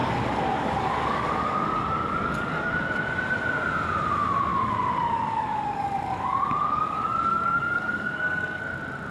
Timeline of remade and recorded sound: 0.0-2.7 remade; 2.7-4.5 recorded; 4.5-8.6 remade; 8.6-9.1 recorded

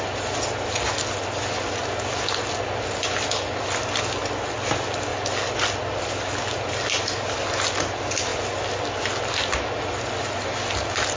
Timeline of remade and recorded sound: 0.0-11.2 recorded